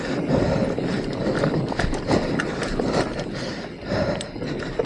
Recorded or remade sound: recorded